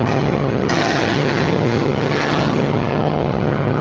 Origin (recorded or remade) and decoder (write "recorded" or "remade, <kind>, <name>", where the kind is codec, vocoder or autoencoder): remade, vocoder, HiFi-GAN